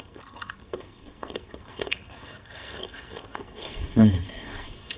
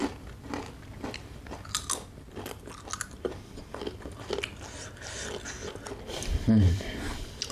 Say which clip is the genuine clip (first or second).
second